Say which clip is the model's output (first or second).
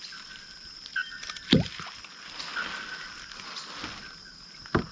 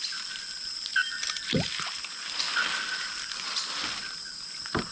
second